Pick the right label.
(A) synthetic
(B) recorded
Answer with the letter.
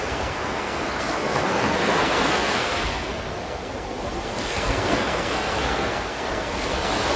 A